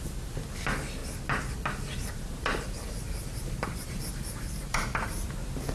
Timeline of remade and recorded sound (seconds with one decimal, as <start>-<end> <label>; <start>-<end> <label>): 0.0-5.7 recorded